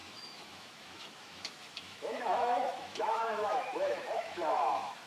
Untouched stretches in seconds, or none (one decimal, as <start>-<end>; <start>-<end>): none